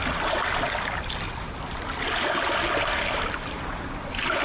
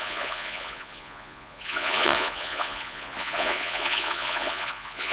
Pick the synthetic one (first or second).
second